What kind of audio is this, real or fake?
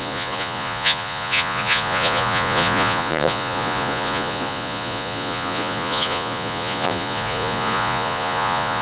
fake